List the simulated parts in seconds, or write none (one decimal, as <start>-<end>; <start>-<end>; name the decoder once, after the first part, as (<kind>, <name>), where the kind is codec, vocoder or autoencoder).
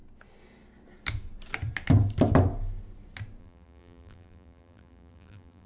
3.4-5.7 (vocoder, BigVGAN v2)